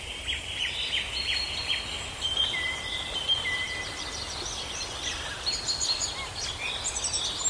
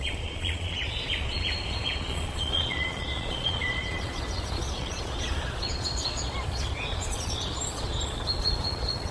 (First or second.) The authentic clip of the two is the first